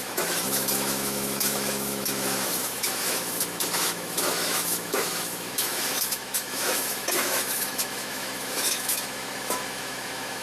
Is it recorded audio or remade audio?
remade